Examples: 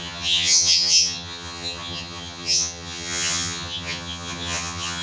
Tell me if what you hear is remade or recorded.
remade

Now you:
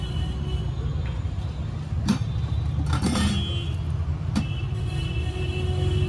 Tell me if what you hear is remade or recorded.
recorded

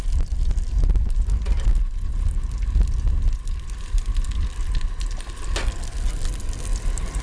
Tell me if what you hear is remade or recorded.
recorded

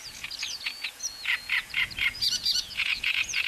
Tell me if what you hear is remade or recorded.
remade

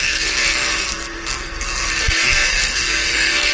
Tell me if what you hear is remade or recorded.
remade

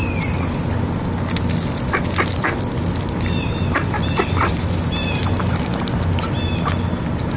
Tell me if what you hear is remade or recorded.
recorded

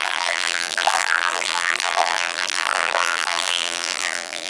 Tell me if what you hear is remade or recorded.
remade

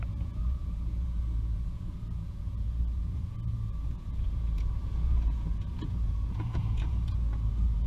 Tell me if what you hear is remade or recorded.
remade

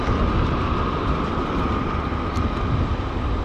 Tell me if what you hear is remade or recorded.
recorded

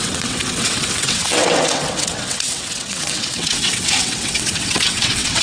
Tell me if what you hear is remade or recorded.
remade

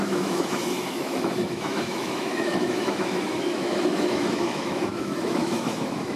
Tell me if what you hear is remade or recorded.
remade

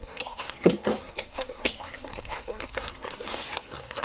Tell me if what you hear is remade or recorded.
remade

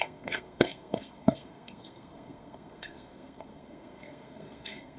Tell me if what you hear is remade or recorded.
remade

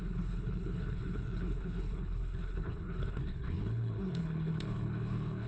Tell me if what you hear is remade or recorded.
remade